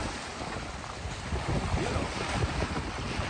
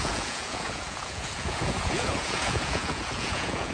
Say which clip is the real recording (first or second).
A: first